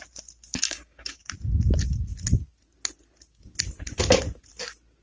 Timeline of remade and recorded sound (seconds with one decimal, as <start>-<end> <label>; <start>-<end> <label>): 0.0-0.5 recorded; 0.5-1.2 remade; 1.2-5.0 recorded